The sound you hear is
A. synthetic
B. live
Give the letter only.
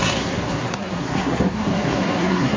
A